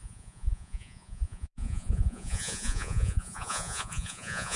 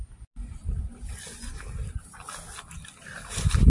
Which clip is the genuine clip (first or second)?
second